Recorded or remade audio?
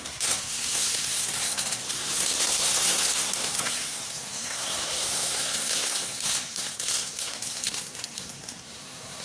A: remade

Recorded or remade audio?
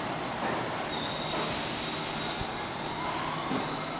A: recorded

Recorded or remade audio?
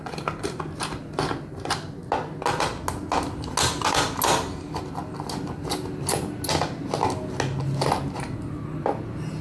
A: recorded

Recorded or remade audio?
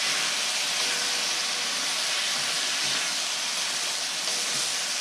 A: recorded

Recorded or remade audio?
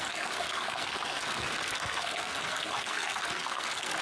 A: remade